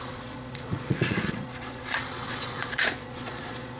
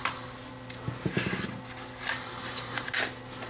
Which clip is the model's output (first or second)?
first